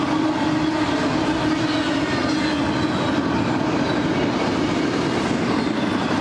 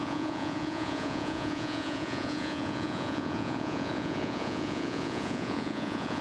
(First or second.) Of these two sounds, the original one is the first